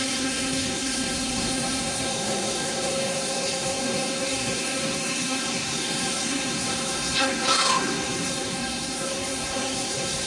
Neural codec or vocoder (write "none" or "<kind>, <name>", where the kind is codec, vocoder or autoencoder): codec, SNAC